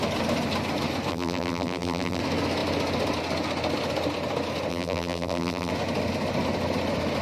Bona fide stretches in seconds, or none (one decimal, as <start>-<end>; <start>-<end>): 0.0-1.1; 2.2-4.7; 5.7-7.2